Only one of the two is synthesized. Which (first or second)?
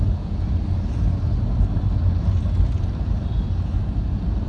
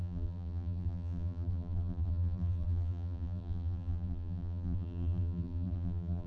second